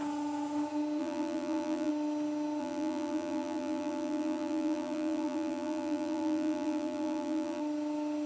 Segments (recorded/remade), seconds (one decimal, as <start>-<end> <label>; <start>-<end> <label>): 0.0-1.0 recorded; 1.0-1.9 remade; 1.9-2.6 recorded; 2.6-7.6 remade; 7.6-8.3 recorded